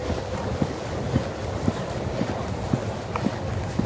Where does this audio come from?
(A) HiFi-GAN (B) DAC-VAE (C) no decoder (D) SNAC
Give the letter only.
C